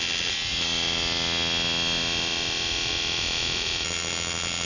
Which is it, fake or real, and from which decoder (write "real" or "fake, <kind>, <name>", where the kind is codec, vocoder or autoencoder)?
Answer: real